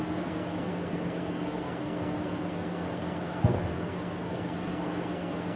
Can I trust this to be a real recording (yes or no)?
no